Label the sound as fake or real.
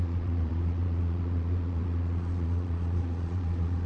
fake